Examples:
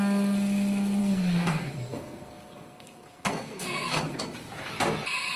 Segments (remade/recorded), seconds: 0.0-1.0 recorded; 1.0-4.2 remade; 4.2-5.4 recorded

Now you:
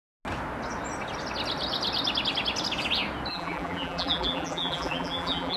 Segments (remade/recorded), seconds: 0.0-3.3 recorded; 3.3-5.6 remade

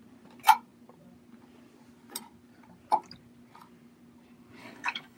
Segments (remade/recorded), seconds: 0.0-4.6 recorded; 4.6-5.2 remade

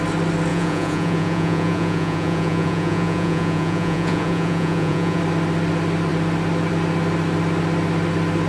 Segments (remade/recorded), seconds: 0.0-0.5 recorded; 0.5-5.2 remade; 5.2-8.5 recorded

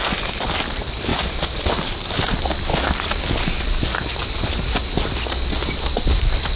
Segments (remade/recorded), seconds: 0.0-4.2 recorded; 4.2-4.8 remade; 4.8-6.6 recorded

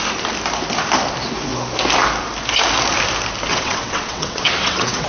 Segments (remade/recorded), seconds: 0.0-3.5 recorded; 3.5-5.1 remade

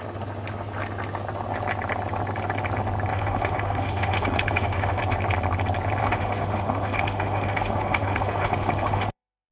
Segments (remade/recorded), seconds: 0.0-3.1 recorded; 3.1-5.0 remade; 5.0-6.0 recorded; 6.0-9.5 remade

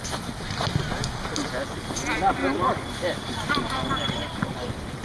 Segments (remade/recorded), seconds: 0.0-5.0 recorded